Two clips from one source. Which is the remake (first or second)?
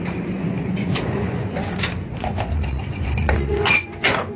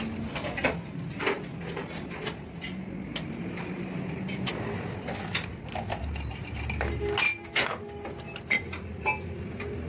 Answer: first